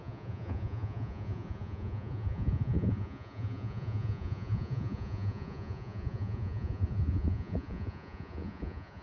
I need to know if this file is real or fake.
fake